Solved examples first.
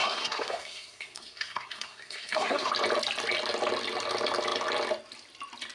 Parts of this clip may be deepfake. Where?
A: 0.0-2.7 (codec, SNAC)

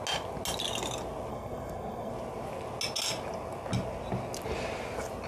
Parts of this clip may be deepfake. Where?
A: 1.3-2.1 (codec, SNAC)

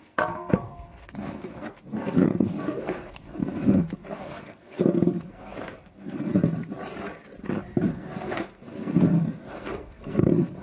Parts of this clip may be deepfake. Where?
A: 0.0-6.3 (codec, SNAC); 7.9-10.6

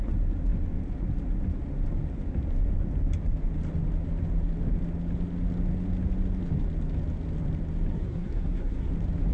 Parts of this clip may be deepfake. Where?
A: 7.9-8.9 (codec, SNAC)

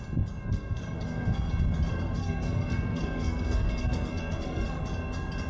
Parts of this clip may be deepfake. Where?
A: 0.4-1.5 (codec, SNAC); 1.9-4.8

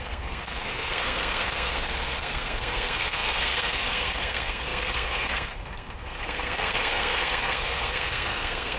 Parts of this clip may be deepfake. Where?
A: 0.0-8.8 (codec, SNAC)

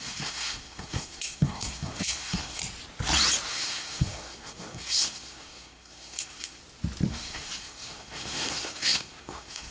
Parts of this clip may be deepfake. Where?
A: 0.0-2.6 (codec, SNAC); 3.5-6.6; 7.1-9.7